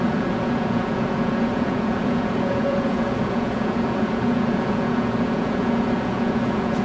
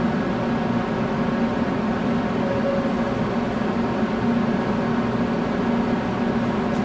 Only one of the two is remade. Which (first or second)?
first